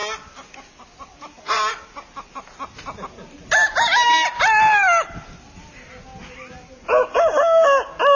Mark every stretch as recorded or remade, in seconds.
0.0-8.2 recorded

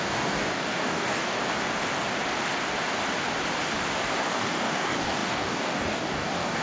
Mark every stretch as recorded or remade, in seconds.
0.0-1.4 remade; 1.4-4.2 recorded; 4.2-6.6 remade

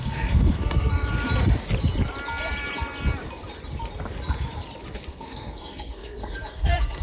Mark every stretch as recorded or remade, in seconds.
0.0-0.9 remade; 0.9-5.1 recorded; 5.1-7.0 remade

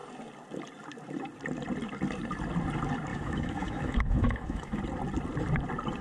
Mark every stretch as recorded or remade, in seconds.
0.0-3.1 recorded; 3.1-4.8 remade; 4.8-6.0 recorded

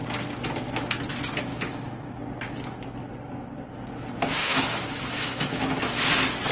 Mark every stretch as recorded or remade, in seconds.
0.0-1.5 recorded; 1.5-2.2 remade; 2.2-4.4 recorded; 4.4-5.8 remade; 5.8-6.5 recorded